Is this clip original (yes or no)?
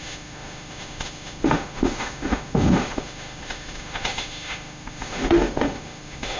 no